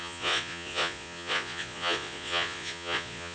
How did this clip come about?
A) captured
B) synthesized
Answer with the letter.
B